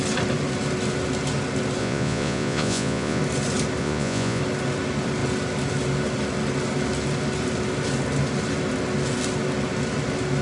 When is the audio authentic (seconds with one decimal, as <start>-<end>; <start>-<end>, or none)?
0.0-1.8; 3.2-3.8; 4.4-10.4